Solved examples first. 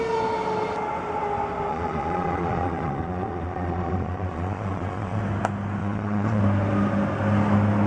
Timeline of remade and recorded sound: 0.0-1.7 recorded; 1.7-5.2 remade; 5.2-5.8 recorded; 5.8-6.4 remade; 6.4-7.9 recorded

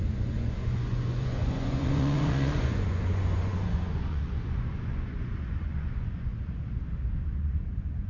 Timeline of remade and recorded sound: 0.0-6.3 remade; 6.3-7.1 recorded; 7.1-8.1 remade

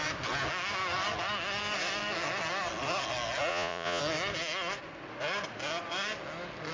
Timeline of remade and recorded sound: 0.0-3.5 recorded; 3.5-4.0 remade; 4.0-6.7 recorded